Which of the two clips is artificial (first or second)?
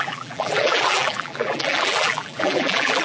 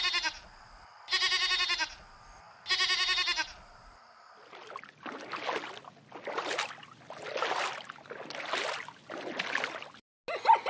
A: first